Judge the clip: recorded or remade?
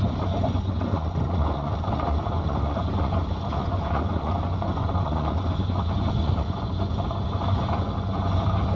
remade